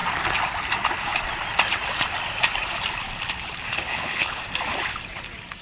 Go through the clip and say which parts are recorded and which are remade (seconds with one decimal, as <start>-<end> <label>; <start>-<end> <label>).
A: 0.0-3.7 recorded; 3.7-4.4 remade; 4.4-5.6 recorded